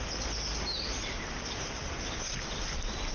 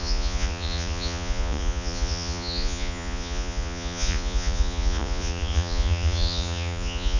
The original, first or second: first